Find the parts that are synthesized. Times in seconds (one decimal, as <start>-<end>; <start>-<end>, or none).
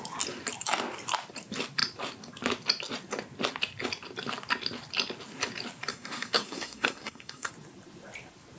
5.9-7.5